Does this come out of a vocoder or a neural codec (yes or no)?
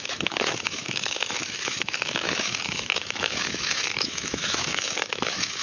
yes